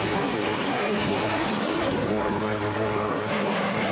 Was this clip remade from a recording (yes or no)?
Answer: yes